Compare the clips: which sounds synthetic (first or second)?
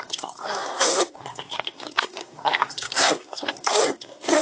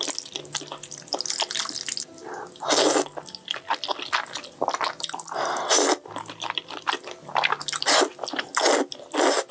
first